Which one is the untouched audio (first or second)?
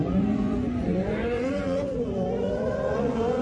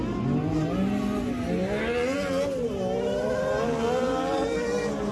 second